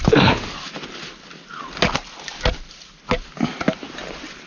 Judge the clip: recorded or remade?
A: recorded